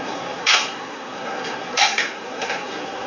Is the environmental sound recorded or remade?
remade